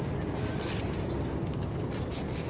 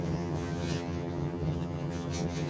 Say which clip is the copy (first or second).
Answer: second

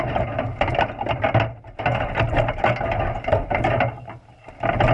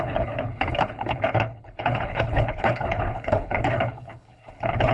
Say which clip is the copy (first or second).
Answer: second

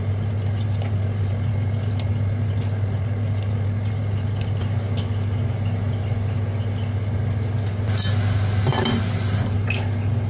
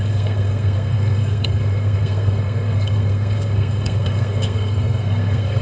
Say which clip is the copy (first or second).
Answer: second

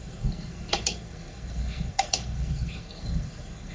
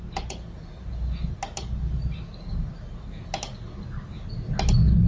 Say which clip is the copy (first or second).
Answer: first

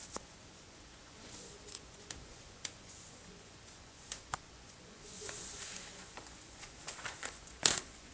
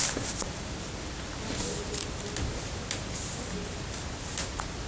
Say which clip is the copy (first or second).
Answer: first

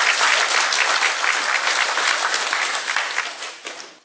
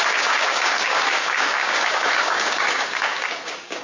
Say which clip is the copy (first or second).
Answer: second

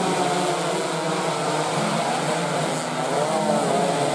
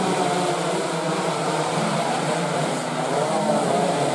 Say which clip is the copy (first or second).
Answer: second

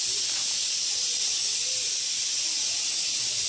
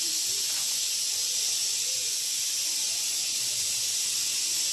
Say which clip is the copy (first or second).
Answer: second